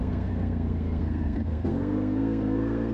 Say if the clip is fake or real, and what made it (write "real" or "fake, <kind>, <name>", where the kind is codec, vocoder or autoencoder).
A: fake, codec, SNAC